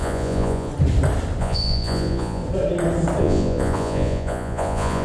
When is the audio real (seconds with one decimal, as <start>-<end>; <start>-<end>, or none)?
0.7-1.4; 2.4-3.2